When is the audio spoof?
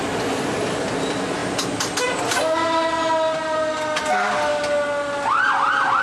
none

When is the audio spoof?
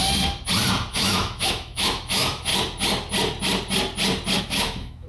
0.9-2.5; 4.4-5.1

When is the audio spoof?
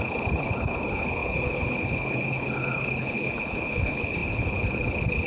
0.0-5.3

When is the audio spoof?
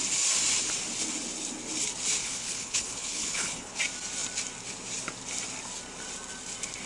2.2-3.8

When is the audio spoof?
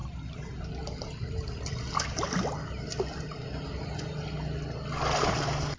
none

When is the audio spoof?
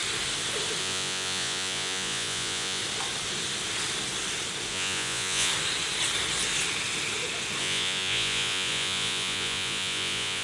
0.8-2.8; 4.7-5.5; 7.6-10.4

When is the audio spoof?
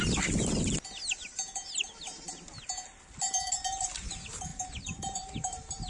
4.5-5.9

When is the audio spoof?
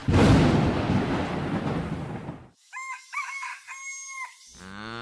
2.6-3.5; 4.6-5.0